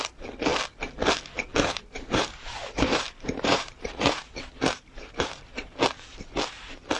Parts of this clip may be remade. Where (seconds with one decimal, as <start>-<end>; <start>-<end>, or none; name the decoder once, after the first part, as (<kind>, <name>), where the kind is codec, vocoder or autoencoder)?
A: 1.5-5.7 (vocoder, BigVGAN v2)